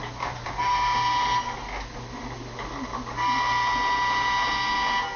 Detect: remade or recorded recorded